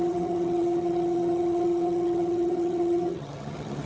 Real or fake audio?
fake